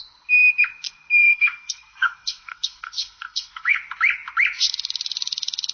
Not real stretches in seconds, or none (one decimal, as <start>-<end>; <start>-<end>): 1.2-3.8